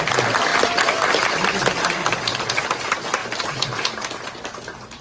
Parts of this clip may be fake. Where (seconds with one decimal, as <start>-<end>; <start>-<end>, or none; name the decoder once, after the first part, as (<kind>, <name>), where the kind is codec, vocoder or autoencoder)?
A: none